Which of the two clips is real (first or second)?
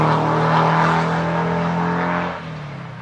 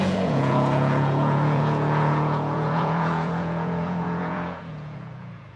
first